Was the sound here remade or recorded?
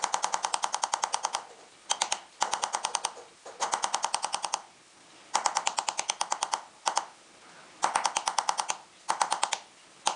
recorded